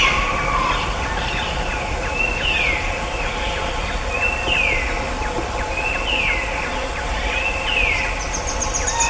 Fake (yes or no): no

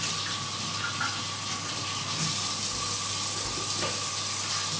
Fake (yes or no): no